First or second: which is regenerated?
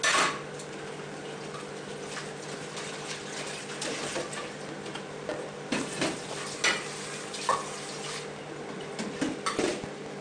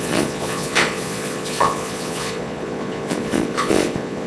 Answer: second